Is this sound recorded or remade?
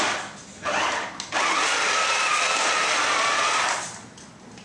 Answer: recorded